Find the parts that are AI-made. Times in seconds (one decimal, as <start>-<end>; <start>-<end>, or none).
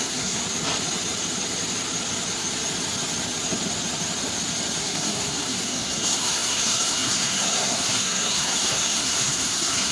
0.0-0.4; 4.8-9.9